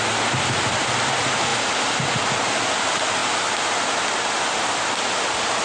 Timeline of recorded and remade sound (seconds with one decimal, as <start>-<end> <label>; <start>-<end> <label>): 0.0-5.6 recorded